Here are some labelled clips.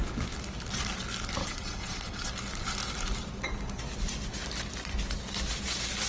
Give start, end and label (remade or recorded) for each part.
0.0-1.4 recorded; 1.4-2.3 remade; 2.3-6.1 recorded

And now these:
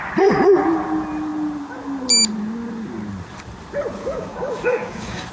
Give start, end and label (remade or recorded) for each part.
0.0-4.0 recorded; 4.0-5.3 remade

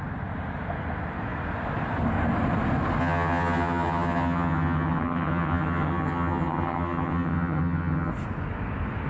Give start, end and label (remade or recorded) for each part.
0.0-3.0 recorded; 3.0-8.1 remade; 8.1-9.1 recorded

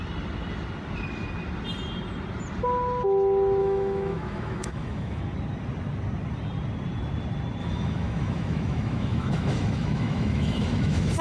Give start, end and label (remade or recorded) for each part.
0.0-3.6 recorded; 3.6-5.2 remade; 5.2-7.6 recorded; 7.6-11.2 remade